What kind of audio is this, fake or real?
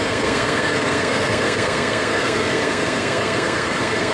fake